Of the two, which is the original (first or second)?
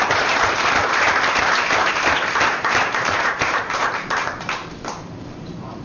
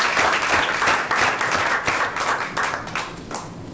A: second